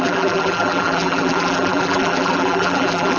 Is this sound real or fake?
fake